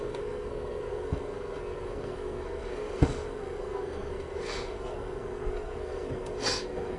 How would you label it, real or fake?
fake